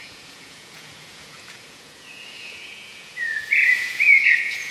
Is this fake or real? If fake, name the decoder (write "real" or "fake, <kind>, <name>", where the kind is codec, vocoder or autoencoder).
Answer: fake, vocoder, Vocos